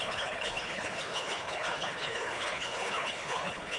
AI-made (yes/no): yes